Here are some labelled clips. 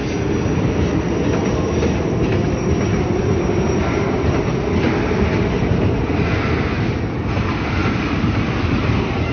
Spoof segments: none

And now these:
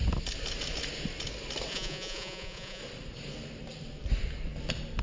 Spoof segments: 1.7-2.8 (vocoder, Vocos)

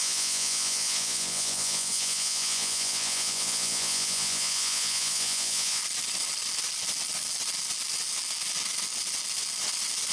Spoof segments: 0.0-5.8 (vocoder, Vocos)

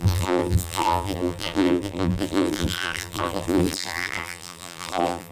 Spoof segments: 0.0-5.3 (vocoder, BigVGAN v2)

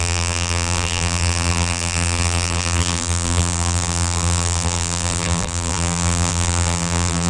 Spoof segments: 0.0-7.3 (vocoder, BigVGAN v2)

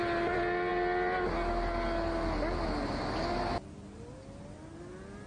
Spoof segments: none